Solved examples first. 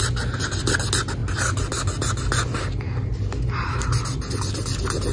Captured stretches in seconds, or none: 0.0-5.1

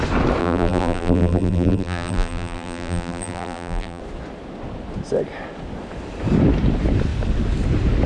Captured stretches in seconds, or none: 0.0-0.4; 4.0-8.1

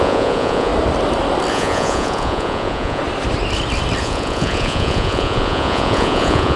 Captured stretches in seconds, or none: 0.7-1.5; 3.0-4.0